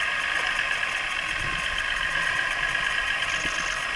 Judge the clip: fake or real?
real